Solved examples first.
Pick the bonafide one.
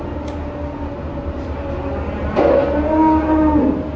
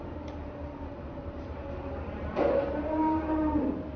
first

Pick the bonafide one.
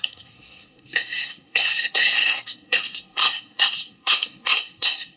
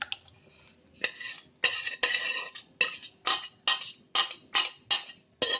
second